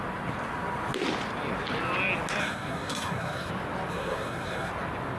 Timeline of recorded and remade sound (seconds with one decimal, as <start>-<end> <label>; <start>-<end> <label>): 0.0-2.4 recorded; 2.4-3.5 remade; 3.5-3.9 recorded; 3.9-4.7 remade; 4.7-5.2 recorded